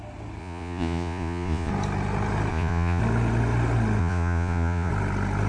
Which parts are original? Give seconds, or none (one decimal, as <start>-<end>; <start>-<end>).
0.0-0.4; 1.7-2.5; 3.0-4.0; 4.9-5.5